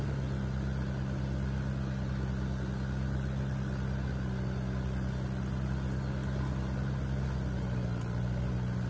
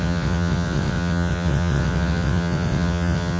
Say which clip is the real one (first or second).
first